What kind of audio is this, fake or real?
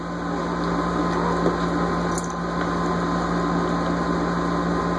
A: real